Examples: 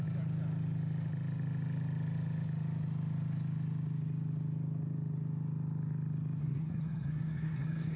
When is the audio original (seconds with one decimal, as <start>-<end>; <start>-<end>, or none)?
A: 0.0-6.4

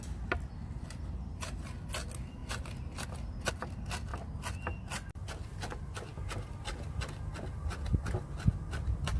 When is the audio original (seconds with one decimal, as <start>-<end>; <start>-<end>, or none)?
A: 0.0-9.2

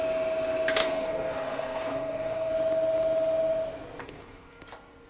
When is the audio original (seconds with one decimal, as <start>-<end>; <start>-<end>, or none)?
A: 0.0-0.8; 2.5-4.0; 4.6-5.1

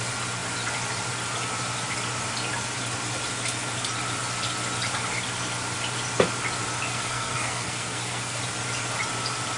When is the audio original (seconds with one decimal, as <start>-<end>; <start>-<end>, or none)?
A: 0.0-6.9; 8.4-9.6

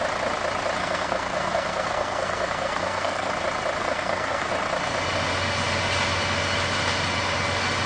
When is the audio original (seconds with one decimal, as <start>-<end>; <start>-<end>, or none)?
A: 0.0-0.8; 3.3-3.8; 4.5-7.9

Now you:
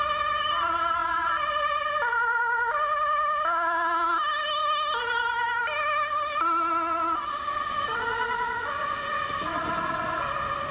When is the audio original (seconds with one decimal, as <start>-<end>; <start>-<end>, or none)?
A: 0.0-10.7

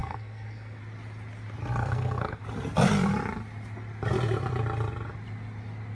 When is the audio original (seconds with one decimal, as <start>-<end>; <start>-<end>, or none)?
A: 0.8-1.8; 2.4-5.9

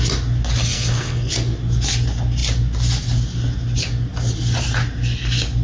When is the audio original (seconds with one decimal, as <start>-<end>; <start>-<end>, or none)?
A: 0.0-0.6; 1.3-5.6